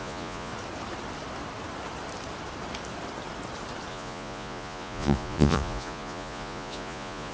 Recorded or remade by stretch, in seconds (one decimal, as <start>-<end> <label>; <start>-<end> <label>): 0.0-0.5 remade; 0.5-3.9 recorded; 3.9-7.3 remade